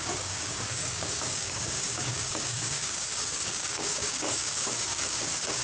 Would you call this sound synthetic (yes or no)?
yes